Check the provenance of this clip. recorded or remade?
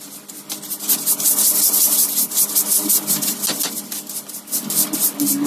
recorded